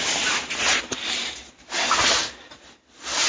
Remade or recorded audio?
recorded